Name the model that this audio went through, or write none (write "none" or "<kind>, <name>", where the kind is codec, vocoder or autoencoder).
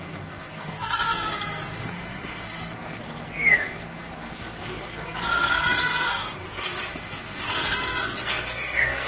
codec, SNAC